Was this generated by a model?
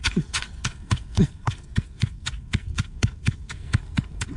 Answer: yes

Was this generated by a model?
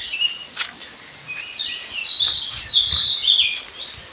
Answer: no